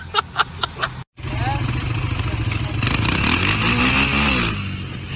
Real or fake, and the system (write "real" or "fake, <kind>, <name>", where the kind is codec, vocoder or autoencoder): real